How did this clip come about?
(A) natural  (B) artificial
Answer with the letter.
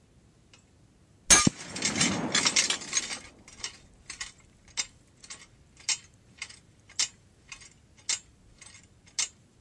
A